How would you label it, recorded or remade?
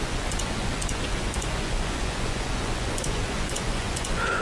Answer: remade